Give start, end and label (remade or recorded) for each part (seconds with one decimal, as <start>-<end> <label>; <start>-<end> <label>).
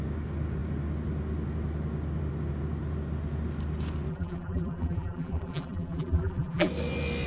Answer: 0.0-4.1 recorded; 4.1-6.7 remade; 6.7-7.3 recorded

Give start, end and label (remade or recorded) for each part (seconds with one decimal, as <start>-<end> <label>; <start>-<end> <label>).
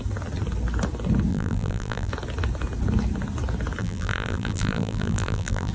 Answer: 0.0-1.3 recorded; 1.3-2.1 remade; 2.1-3.8 recorded; 3.8-5.7 remade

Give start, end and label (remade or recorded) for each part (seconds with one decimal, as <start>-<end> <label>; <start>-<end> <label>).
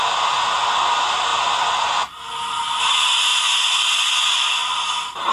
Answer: 0.0-5.3 recorded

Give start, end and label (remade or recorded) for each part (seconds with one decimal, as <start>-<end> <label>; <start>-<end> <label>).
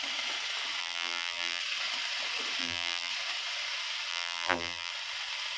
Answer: 0.0-0.8 recorded; 0.8-1.6 remade; 1.6-2.6 recorded; 2.6-3.1 remade; 3.1-4.1 recorded; 4.1-4.9 remade; 4.9-5.6 recorded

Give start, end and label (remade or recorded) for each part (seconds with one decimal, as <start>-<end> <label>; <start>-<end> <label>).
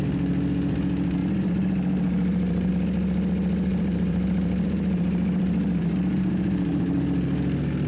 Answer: 0.0-1.2 recorded; 1.2-2.7 remade; 2.7-3.7 recorded; 3.7-7.0 remade; 7.0-7.9 recorded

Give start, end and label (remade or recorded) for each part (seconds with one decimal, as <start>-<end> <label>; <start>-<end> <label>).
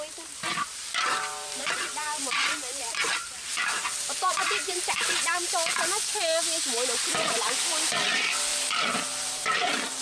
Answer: 0.0-0.8 recorded; 0.8-5.3 remade; 5.3-8.5 recorded; 8.5-10.0 remade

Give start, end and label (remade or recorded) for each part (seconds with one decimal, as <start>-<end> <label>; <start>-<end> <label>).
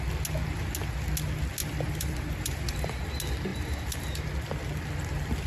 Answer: 0.0-1.6 recorded; 1.6-3.0 remade; 3.0-3.5 recorded; 3.5-4.2 remade; 4.2-5.5 recorded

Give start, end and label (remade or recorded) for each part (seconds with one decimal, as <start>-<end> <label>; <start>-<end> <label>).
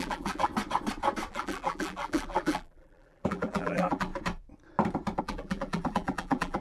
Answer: 0.0-0.5 remade; 0.5-1.3 recorded; 1.3-4.1 remade; 4.1-5.2 recorded; 5.2-6.6 remade